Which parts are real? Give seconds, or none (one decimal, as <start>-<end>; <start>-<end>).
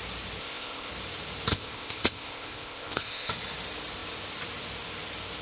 0.0-0.4; 0.9-1.5; 3.3-5.4